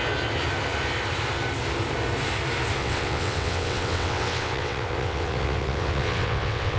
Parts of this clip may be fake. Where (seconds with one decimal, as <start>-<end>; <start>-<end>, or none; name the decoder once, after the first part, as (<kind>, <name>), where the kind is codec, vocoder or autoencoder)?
2.8-6.8 (vocoder, WaveNeXt)